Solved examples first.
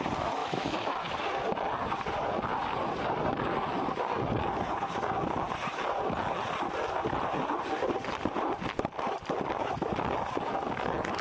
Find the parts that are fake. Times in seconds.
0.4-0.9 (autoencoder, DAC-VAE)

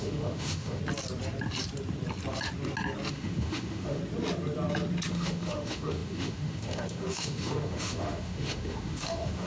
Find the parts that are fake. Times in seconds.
0.0-0.8 (autoencoder, DAC-VAE); 3.1-4.0; 5.1-9.5